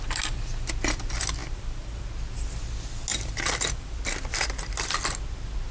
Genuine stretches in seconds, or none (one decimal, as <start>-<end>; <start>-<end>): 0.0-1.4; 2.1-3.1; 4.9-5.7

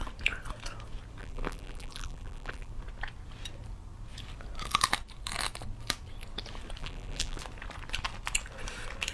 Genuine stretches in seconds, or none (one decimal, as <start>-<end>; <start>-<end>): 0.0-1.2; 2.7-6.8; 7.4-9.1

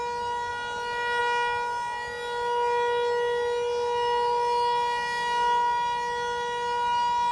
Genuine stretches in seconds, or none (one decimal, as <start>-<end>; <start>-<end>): 0.0-7.3

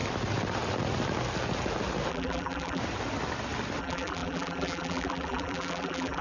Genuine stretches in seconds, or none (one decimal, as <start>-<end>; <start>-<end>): 0.0-2.1; 2.8-3.8